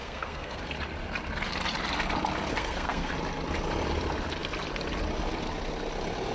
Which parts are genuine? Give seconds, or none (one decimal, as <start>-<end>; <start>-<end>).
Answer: 0.6-2.5; 3.1-6.3